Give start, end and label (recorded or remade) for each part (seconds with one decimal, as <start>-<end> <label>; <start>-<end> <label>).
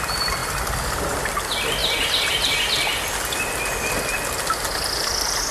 0.0-1.8 recorded; 1.8-2.6 remade; 2.6-5.5 recorded